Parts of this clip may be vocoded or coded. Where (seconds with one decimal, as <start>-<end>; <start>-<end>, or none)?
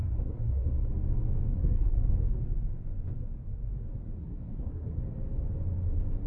0.0-0.9; 1.5-2.1; 4.2-5.0